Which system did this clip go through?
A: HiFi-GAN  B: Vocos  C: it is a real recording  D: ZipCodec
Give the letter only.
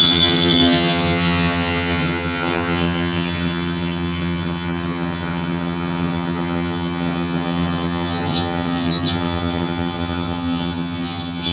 A